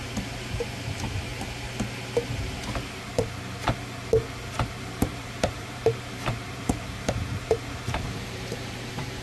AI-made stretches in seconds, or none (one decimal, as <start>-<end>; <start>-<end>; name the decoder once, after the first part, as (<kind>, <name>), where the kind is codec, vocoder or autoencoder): 0.0-1.3 (vocoder, BigVGAN v2); 4.8-9.2